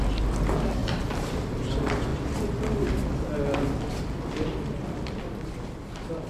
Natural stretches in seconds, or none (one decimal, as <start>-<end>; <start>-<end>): 0.0-0.8; 1.3-6.3

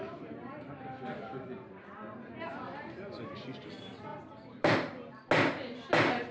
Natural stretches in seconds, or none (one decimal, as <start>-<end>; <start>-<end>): 0.0-4.1; 5.1-6.3